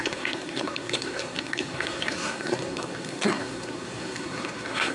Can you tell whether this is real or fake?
fake